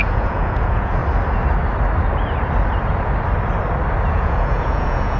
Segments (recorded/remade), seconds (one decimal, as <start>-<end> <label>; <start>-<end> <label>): 0.0-1.0 remade; 1.0-4.1 recorded; 4.1-5.2 remade